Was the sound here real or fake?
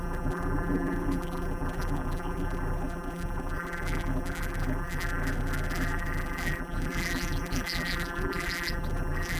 fake